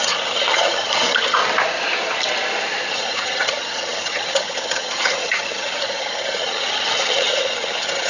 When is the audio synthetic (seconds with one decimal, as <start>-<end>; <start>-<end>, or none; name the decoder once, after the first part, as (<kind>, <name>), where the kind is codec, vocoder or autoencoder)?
0.0-1.4 (vocoder, HiFi-GAN); 2.9-8.1

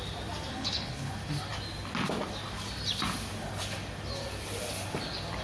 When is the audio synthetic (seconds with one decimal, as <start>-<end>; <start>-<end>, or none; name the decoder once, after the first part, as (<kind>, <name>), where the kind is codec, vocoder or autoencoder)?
0.5-1.1 (codec, HILCodec)